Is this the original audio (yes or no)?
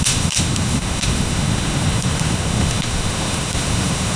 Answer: no